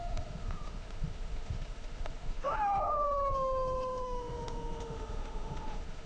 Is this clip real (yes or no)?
no